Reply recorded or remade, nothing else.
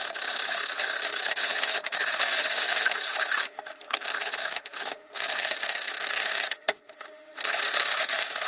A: remade